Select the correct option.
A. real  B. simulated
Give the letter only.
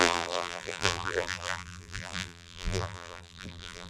B